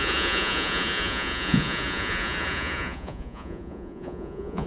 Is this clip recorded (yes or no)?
no